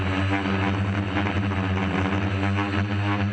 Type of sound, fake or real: real